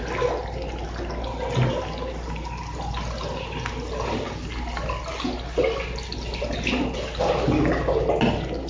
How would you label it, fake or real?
real